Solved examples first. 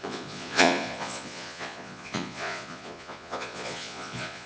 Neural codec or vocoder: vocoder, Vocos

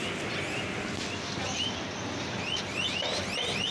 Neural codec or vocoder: none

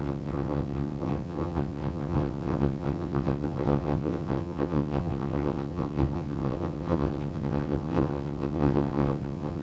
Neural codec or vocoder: vocoder, WaveNeXt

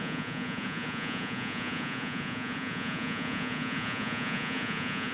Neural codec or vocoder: vocoder, Vocos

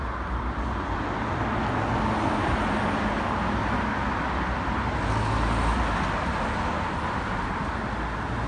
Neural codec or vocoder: none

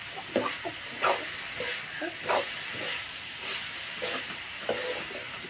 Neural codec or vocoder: none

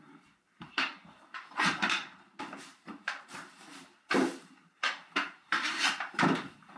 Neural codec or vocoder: vocoder, BigVGAN v2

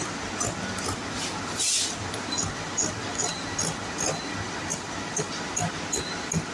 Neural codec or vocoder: none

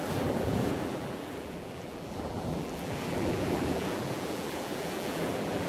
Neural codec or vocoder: vocoder, BigVGAN v2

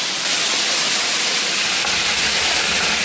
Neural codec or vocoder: none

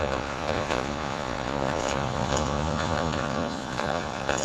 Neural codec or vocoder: vocoder, Vocos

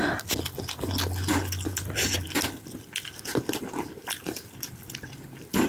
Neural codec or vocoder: none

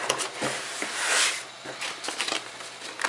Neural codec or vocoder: none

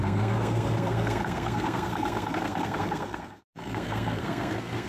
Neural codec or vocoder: codec, SNAC